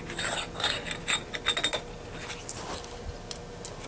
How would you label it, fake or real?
real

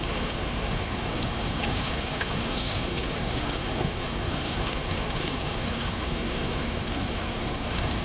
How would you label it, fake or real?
fake